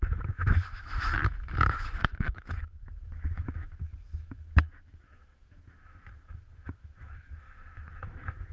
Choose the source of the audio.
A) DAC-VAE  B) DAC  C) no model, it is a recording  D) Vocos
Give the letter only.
A